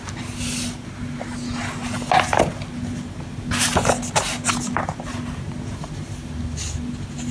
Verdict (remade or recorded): recorded